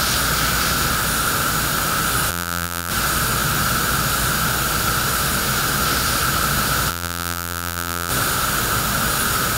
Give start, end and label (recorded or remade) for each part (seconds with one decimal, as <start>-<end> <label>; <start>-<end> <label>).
0.0-2.3 recorded; 2.3-2.9 remade; 2.9-6.9 recorded; 6.9-8.1 remade; 8.1-9.6 recorded